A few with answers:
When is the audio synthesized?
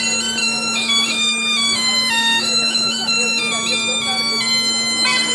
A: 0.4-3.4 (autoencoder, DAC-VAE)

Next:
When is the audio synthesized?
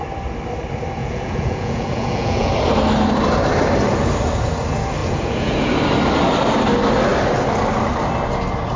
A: 1.0-2.5 (vocoder, Vocos); 5.0-5.7